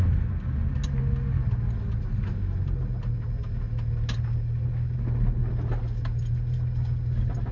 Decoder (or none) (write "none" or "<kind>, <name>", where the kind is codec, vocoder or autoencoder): none